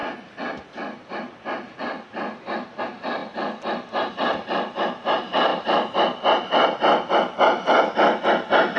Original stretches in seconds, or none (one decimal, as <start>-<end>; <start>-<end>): 0.0-8.8